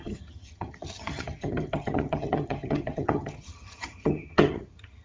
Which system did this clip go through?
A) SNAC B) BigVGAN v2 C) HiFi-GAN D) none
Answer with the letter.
C